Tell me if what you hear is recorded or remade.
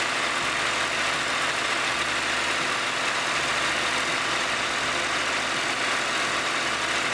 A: recorded